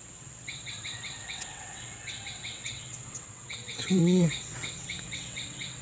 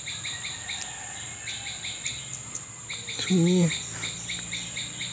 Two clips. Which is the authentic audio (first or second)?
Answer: second